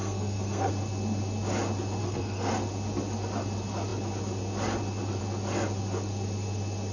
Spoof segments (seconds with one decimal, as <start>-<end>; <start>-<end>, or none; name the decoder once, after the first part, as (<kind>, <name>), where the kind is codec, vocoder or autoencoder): 0.0-0.7 (codec, SNAC); 2.0-2.5